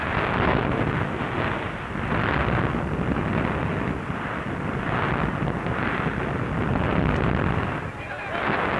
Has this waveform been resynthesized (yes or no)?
no